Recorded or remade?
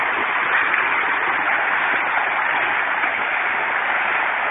recorded